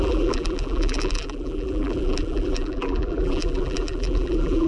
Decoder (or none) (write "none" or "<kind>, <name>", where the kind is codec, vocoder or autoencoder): vocoder, BigVGAN v2